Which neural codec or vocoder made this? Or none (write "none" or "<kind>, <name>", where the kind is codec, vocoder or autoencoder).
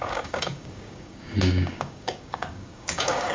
codec, DAC